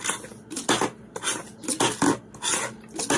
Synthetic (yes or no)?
no